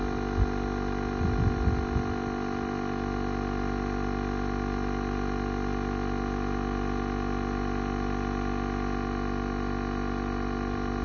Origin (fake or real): real